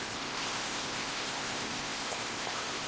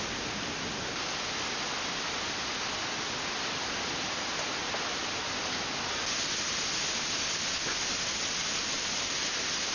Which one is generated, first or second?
first